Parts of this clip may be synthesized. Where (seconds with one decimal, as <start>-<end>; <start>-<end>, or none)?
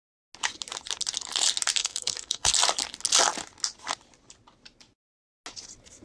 1.8-2.5